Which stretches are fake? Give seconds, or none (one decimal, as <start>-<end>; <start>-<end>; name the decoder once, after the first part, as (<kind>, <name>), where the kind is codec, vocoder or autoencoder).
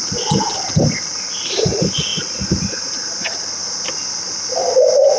none